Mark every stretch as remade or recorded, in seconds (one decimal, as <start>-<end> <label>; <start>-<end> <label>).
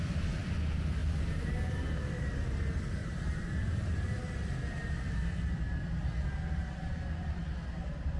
0.0-3.0 recorded; 3.0-4.2 remade; 4.2-8.2 recorded